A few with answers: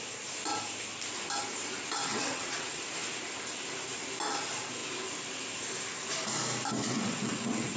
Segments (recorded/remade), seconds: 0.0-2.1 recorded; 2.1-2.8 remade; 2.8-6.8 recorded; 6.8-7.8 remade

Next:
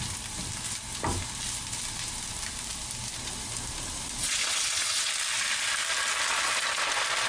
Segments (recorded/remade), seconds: 0.0-4.2 recorded; 4.2-5.1 remade; 5.1-7.3 recorded

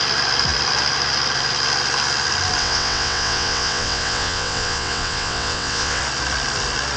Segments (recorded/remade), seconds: 0.0-2.6 recorded; 2.6-6.0 remade; 6.0-7.0 recorded

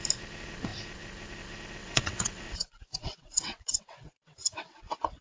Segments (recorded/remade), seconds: 0.0-1.8 recorded; 1.8-5.2 remade

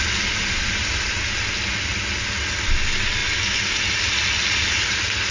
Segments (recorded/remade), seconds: 0.0-5.3 recorded

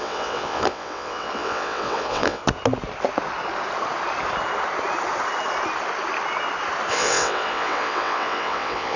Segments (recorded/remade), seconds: 0.0-2.4 remade; 2.4-6.9 recorded; 6.9-9.0 remade

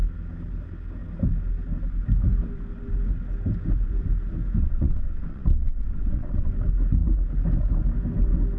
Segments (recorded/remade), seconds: 0.0-4.6 recorded; 4.6-6.5 remade; 6.5-8.6 recorded

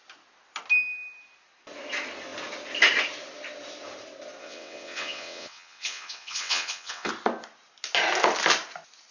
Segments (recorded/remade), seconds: 0.0-4.4 recorded; 4.4-7.1 remade; 7.1-9.1 recorded